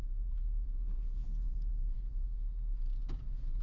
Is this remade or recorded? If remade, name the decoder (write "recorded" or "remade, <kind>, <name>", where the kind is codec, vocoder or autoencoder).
remade, vocoder, Vocos